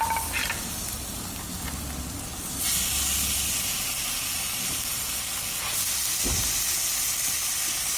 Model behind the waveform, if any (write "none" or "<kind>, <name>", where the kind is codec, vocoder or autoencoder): none